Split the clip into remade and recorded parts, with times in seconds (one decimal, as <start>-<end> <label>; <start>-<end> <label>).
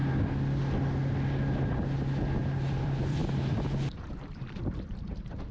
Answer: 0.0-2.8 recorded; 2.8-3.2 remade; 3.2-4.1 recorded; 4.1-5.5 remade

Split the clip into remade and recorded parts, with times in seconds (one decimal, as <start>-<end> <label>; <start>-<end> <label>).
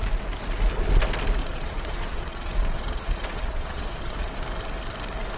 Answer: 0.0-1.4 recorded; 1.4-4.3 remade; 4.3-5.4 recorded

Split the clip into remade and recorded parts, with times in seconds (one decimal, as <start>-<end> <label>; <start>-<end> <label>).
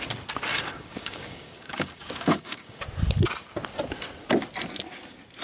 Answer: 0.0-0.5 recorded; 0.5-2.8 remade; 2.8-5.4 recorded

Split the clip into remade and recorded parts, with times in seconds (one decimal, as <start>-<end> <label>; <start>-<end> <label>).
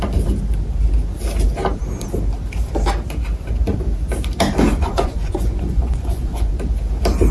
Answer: 0.0-4.7 recorded; 4.7-6.5 remade; 6.5-7.3 recorded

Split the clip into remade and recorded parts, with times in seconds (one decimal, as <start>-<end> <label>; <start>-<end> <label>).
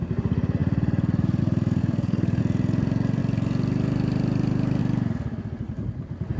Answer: 0.0-1.8 recorded; 1.8-2.4 remade; 2.4-6.4 recorded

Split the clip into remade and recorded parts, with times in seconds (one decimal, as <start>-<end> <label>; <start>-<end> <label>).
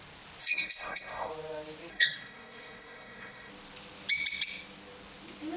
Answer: 0.0-0.4 recorded; 0.4-1.3 remade; 1.3-1.9 recorded; 1.9-3.5 remade; 3.5-5.6 recorded